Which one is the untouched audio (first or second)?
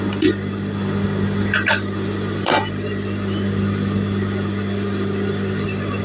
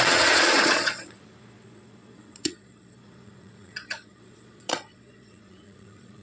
first